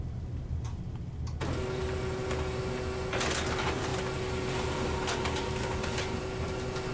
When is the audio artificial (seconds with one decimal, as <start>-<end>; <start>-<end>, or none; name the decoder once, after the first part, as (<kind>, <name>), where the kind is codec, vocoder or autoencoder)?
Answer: none